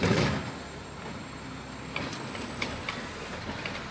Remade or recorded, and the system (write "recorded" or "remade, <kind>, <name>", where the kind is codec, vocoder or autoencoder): recorded